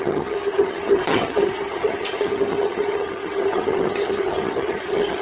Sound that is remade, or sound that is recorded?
remade